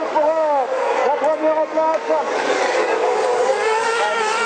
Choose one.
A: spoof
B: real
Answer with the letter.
A